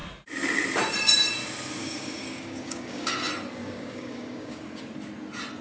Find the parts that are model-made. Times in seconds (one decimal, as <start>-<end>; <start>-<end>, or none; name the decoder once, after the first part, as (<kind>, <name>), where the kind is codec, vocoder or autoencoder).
1.8-3.1 (codec, DAC); 3.6-4.8